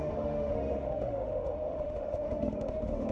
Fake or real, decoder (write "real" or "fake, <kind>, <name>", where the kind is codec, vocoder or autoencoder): fake, autoencoder, DAC-VAE